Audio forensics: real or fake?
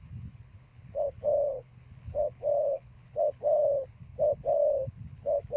fake